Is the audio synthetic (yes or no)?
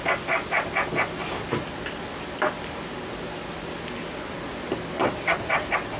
no